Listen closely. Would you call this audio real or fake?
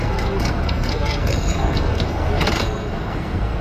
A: fake